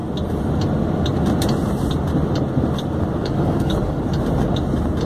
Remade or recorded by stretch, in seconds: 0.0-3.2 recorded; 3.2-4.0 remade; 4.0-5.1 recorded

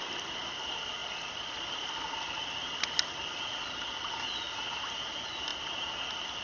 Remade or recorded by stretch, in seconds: 0.0-6.4 recorded

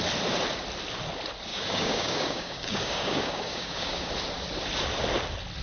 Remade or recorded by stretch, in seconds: 0.0-1.5 recorded; 1.5-4.1 remade; 4.1-5.6 recorded

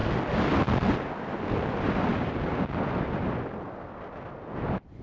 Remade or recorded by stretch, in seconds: 0.0-5.0 recorded

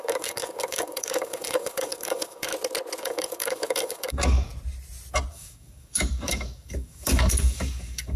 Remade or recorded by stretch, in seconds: 0.0-2.5 remade; 2.5-3.0 recorded; 3.0-4.5 remade; 4.5-5.3 recorded; 5.3-8.2 remade